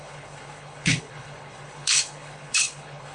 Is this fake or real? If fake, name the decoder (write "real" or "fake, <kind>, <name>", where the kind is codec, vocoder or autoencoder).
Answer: fake, codec, HILCodec